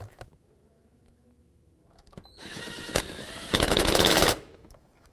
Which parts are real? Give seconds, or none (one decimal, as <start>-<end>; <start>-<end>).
none